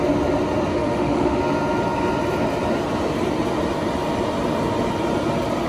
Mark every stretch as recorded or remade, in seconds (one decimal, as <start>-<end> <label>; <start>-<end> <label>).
0.0-0.7 recorded; 0.7-1.4 remade; 1.4-5.7 recorded